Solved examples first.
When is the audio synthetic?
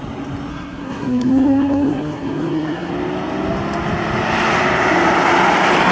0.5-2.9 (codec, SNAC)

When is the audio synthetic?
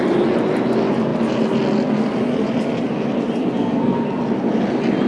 3.4-4.0 (codec, SNAC)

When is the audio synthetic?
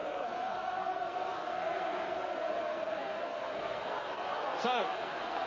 0.0-5.5 (codec, SNAC)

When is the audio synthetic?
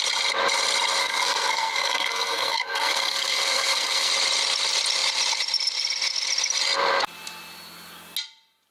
1.0-4.1 (codec, SNAC)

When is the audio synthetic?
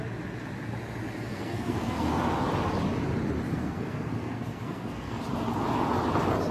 1.3-2.2 (codec, SNAC); 3.5-5.2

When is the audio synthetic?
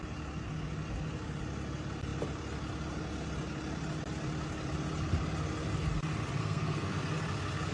6.4-7.0 (codec, SNAC)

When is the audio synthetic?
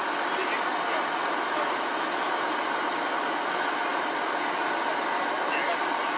none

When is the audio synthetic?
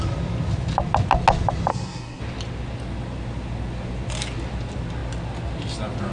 1.7-2.2 (codec, SNAC)